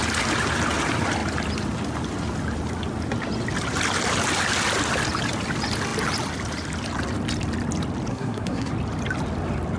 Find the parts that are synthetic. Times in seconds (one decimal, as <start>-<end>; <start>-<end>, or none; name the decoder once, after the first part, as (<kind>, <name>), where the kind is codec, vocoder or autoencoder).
8.1-8.7 (codec, SNAC)